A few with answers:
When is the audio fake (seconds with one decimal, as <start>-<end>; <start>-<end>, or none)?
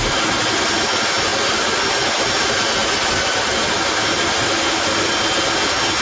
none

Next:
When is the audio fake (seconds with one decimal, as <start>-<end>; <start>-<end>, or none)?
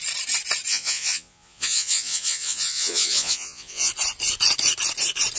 0.7-3.9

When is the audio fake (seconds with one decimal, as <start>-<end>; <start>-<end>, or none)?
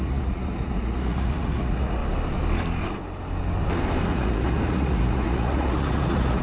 0.0-2.0; 4.1-6.4